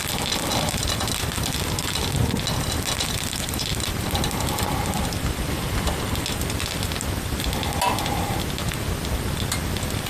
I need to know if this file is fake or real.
real